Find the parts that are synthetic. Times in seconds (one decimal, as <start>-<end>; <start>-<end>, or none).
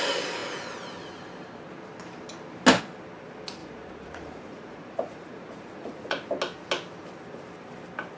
3.6-6.3